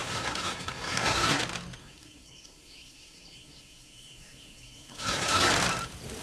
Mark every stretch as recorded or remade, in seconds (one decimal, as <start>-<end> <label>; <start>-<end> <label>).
0.0-1.4 remade; 1.4-1.8 recorded; 1.8-5.5 remade; 5.5-6.2 recorded

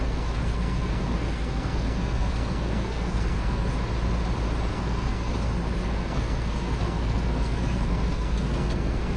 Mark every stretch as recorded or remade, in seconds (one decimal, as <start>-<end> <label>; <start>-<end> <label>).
0.0-3.7 remade; 3.7-4.7 recorded; 4.7-5.3 remade; 5.3-5.8 recorded; 5.8-9.2 remade